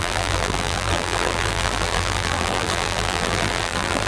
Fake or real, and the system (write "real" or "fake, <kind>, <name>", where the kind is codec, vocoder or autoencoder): fake, vocoder, BigVGAN v2